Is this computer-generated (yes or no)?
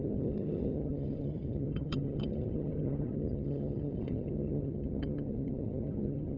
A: yes